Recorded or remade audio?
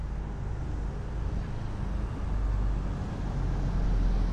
recorded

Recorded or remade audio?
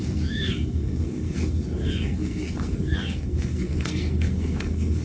remade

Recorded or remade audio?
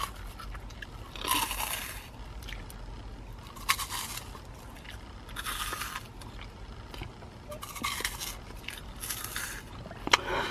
recorded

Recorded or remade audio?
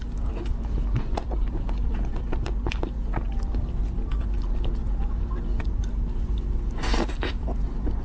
recorded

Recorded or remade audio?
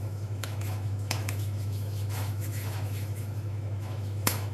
remade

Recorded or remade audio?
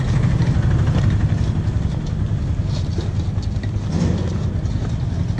recorded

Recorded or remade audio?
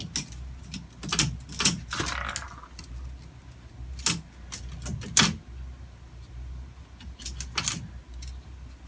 recorded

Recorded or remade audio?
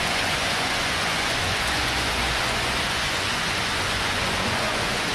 remade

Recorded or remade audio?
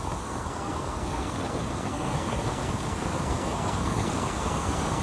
remade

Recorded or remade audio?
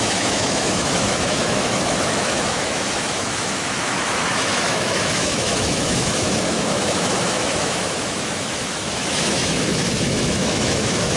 remade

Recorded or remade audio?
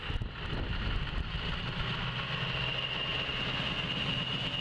recorded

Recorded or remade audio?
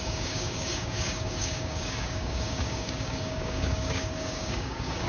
remade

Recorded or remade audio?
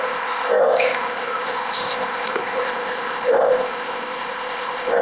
remade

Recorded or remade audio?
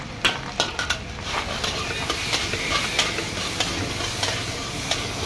recorded